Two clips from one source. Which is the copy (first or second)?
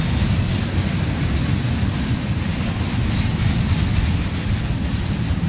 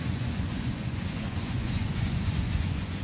second